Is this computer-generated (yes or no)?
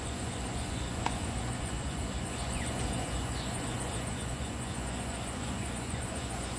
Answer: yes